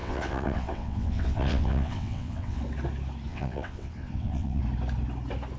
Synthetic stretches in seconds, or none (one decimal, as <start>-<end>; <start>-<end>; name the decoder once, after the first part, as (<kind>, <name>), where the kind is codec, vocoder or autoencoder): 0.0-2.6 (vocoder, WaveNeXt); 3.3-4.6